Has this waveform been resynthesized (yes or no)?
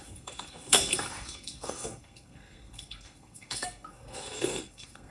yes